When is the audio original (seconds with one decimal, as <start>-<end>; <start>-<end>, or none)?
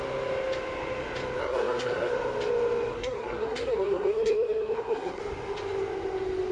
0.0-1.4; 2.1-2.9; 5.2-6.5